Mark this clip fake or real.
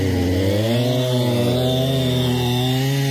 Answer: real